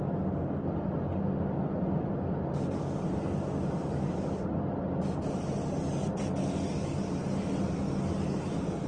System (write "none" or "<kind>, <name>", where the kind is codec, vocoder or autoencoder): none